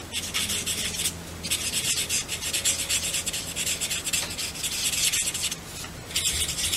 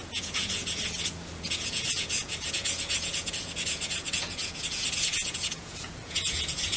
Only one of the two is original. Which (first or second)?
first